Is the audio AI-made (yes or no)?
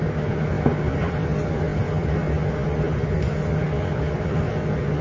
no